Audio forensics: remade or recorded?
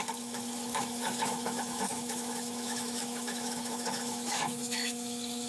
remade